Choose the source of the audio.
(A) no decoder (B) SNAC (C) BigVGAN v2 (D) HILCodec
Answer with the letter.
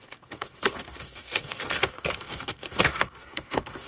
B